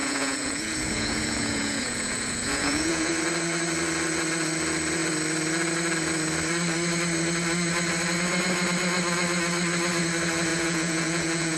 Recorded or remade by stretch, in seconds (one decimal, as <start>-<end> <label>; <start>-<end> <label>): 0.0-3.1 remade; 3.1-10.5 recorded; 10.5-11.6 remade